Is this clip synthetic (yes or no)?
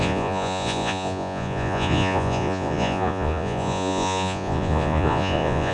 yes